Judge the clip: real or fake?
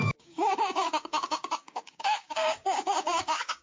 fake